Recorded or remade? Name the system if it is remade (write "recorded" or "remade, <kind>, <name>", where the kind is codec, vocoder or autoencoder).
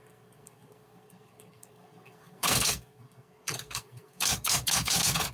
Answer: remade, codec, SNAC